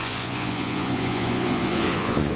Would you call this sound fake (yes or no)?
yes